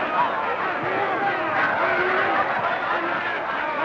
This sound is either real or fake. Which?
real